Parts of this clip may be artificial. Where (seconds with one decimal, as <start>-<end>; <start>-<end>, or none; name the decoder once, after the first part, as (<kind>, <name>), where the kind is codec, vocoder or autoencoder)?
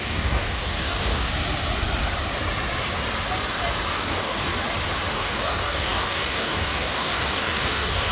0.0-1.3 (codec, DAC); 3.9-4.5; 5.1-8.1